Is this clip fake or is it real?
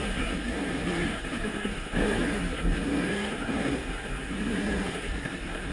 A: fake